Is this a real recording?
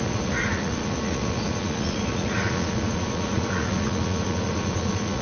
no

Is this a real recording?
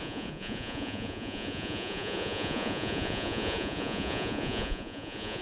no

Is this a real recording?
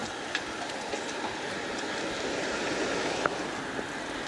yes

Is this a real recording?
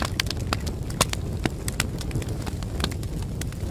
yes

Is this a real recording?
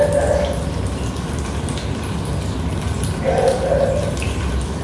yes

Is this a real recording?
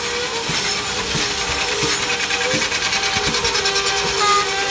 yes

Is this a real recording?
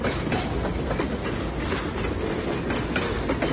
yes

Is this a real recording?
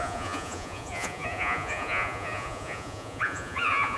no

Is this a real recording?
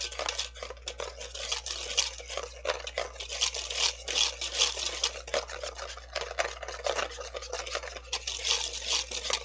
yes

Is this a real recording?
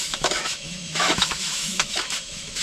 no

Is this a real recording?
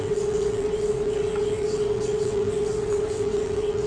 no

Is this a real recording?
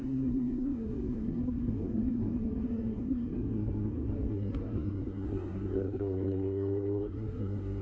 no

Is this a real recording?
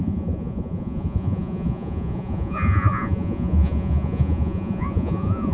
no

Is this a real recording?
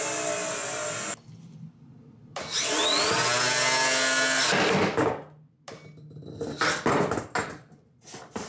yes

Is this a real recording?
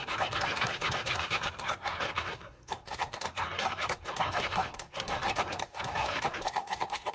no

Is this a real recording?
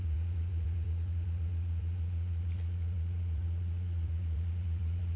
no